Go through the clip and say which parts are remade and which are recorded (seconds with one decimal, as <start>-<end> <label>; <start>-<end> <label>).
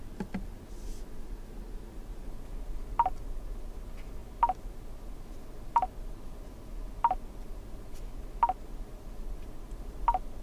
0.0-10.4 recorded